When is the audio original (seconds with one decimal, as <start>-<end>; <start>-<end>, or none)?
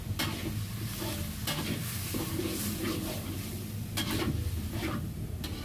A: 0.0-5.6